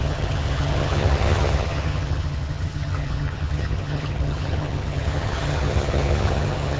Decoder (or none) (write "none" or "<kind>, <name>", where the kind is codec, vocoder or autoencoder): vocoder, HiFi-GAN